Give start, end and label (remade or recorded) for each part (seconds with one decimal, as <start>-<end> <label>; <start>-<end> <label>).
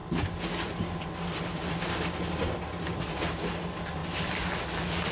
0.0-5.1 recorded